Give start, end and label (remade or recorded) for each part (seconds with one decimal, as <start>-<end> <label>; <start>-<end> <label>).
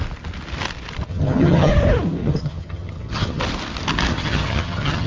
0.0-1.1 recorded; 1.1-1.7 remade; 1.7-2.2 recorded; 2.2-3.4 remade; 3.4-4.1 recorded; 4.1-5.1 remade